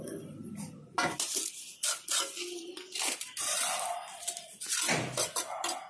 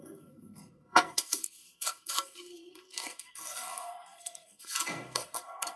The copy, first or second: second